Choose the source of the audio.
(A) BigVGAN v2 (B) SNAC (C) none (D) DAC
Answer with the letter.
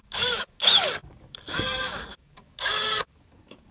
D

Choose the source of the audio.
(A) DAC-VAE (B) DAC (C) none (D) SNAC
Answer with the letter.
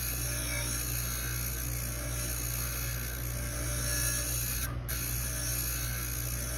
C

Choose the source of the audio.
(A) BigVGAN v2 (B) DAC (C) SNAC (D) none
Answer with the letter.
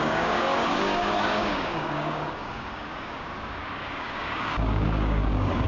B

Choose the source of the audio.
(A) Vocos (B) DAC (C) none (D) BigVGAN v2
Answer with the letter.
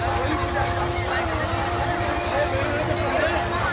C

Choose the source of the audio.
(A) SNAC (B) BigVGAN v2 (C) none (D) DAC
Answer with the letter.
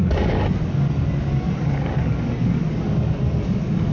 D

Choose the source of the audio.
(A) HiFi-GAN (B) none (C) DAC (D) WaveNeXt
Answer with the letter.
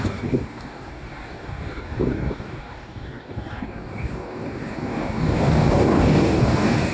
C